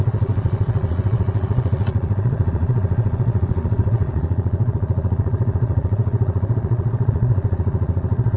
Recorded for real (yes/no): no